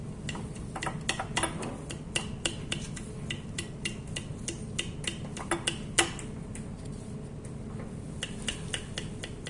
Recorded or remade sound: recorded